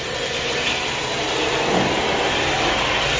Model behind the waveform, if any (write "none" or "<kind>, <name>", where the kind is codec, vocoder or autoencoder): none